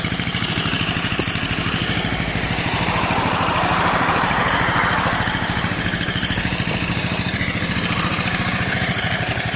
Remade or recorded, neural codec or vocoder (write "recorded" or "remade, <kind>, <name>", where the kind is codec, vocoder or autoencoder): remade, vocoder, BigVGAN v2